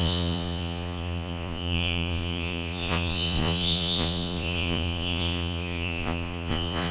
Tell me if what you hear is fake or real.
fake